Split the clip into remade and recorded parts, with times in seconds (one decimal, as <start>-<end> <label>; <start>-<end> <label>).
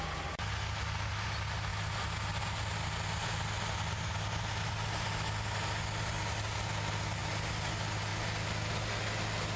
0.0-9.6 recorded